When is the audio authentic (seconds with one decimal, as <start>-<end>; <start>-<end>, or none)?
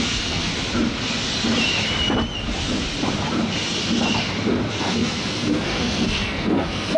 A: 0.5-4.7